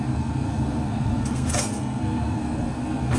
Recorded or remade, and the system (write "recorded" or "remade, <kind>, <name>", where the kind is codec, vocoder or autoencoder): remade, codec, SNAC